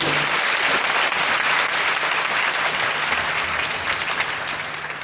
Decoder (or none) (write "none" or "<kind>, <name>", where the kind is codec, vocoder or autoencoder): none